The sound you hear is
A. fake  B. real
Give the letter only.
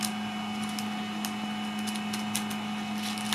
B